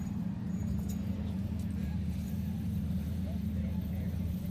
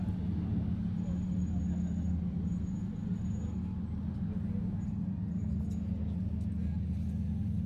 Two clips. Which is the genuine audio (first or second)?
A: second